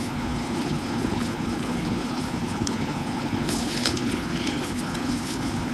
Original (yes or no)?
no